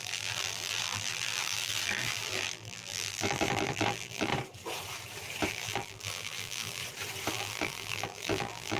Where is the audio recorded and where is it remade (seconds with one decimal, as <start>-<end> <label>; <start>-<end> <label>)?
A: 0.0-4.3 remade; 4.3-5.5 recorded; 5.5-6.8 remade; 6.8-7.3 recorded; 7.3-8.8 remade